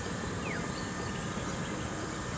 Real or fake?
real